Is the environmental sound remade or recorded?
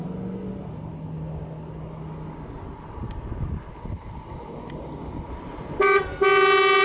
recorded